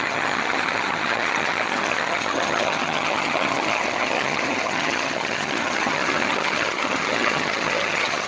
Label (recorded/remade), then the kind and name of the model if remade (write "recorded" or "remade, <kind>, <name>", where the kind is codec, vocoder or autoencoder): remade, vocoder, HiFi-GAN